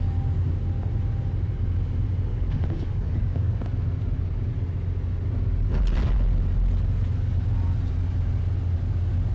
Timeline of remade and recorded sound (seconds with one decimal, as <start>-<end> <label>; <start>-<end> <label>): 0.0-2.3 recorded; 2.3-3.5 remade; 3.5-9.3 recorded